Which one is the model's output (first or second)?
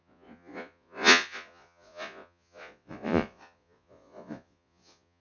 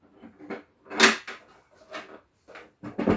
first